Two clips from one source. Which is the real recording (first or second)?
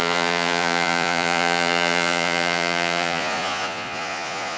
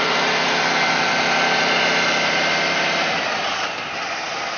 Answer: second